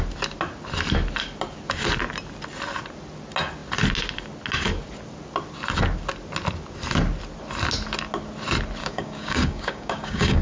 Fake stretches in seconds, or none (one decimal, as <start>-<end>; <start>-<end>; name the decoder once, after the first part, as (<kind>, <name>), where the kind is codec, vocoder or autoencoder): 8.8-10.4 (codec, DAC)